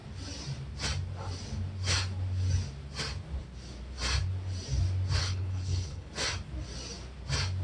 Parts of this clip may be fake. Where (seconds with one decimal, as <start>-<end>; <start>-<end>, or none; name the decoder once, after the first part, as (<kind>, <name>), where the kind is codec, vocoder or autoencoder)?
5.2-6.1 (codec, HILCodec)